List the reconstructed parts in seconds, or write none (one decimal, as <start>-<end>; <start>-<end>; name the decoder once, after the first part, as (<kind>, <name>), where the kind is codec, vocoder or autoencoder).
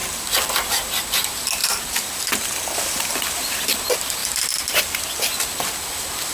0.0-1.0 (vocoder, BigVGAN v2); 1.6-2.3